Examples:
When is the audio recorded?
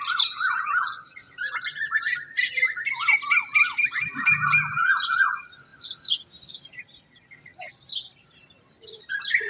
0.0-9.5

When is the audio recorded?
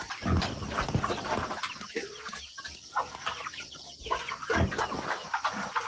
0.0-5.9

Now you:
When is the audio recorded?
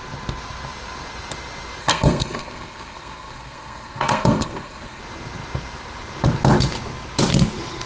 0.0-1.8; 5.0-7.9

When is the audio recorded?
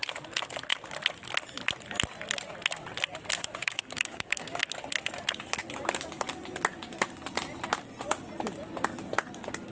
0.0-3.6; 4.6-9.7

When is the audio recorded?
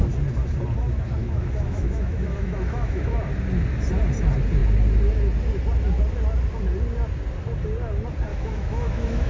0.0-1.2; 3.2-8.3